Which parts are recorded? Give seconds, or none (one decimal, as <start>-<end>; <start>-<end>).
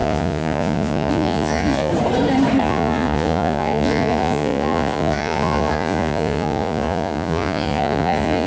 1.9-2.6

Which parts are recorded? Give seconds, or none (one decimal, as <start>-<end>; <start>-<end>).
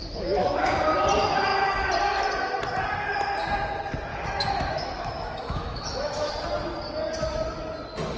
0.7-4.1; 6.3-8.2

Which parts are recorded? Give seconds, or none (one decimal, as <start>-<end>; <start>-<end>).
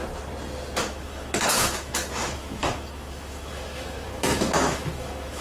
0.0-0.9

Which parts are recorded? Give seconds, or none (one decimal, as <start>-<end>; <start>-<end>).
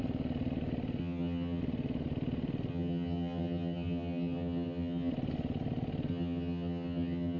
0.0-1.0; 1.6-2.7; 5.1-6.1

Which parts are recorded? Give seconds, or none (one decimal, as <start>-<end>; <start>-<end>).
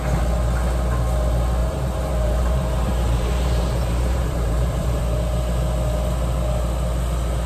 0.0-1.6; 5.0-7.5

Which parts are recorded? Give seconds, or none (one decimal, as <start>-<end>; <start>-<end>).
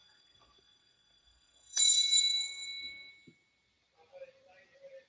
3.1-5.1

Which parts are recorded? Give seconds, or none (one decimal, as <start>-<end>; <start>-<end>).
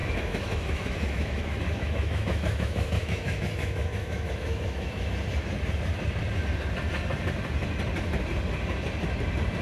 5.1-9.6